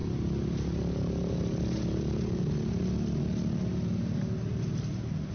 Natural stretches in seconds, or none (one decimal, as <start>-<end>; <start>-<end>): 0.0-5.3